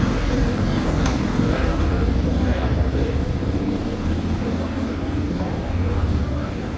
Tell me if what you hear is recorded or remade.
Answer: remade